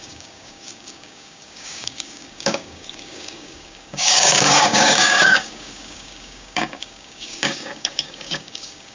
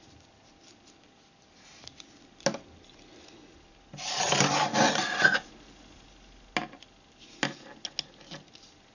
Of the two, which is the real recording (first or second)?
second